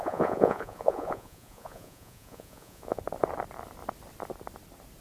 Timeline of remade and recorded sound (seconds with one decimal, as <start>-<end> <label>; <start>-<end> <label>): 0.0-3.0 remade; 3.0-5.0 recorded